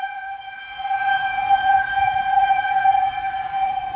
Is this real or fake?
fake